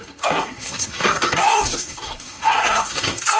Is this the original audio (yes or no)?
no